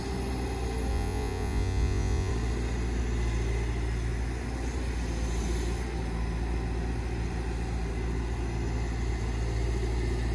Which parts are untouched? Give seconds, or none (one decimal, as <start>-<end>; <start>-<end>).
0.0-0.9; 2.3-10.3